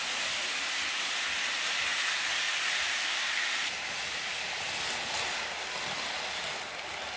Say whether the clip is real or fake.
real